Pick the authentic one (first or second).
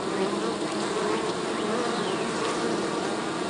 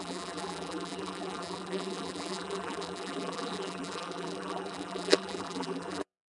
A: first